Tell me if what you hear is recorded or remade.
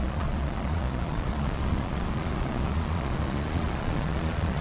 remade